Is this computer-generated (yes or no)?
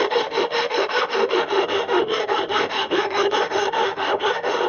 yes